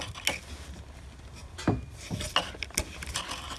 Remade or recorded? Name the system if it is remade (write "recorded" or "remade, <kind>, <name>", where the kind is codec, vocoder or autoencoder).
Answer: recorded